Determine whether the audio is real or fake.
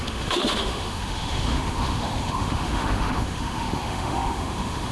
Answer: fake